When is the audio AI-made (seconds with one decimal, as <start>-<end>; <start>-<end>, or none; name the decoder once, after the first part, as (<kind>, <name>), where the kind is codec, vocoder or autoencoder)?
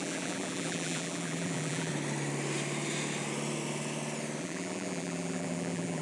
0.0-1.9 (vocoder, BigVGAN v2); 4.4-6.0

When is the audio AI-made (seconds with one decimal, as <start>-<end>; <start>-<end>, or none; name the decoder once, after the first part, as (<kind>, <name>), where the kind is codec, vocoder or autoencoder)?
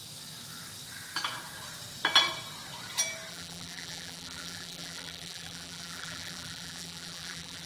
3.3-7.7 (vocoder, BigVGAN v2)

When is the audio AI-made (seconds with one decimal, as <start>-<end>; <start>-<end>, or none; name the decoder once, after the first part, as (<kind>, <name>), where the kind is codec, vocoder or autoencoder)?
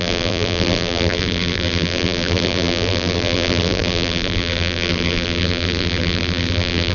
0.0-6.9 (vocoder, BigVGAN v2)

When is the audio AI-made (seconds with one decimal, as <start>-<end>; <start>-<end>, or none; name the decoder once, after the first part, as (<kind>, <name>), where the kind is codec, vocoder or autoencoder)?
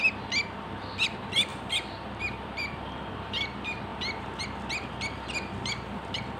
1.5-3.1 (vocoder, BigVGAN v2)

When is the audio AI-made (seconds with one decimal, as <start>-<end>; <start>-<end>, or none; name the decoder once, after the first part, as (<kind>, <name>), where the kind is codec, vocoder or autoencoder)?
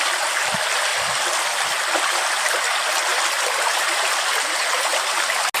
3.1-4.3 (vocoder, BigVGAN v2)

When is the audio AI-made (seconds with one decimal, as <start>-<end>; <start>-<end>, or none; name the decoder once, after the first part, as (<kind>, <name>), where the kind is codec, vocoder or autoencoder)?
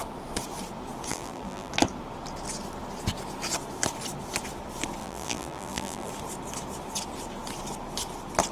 1.1-1.7 (vocoder, BigVGAN v2); 5.0-6.1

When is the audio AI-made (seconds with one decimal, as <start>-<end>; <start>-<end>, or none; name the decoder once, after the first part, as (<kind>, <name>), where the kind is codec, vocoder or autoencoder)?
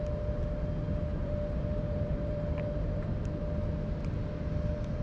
1.1-3.4 (vocoder, BigVGAN v2)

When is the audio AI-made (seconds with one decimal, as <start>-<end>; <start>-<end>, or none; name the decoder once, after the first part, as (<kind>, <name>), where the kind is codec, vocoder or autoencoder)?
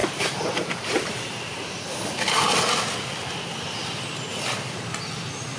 0.0-2.0 (vocoder, BigVGAN v2)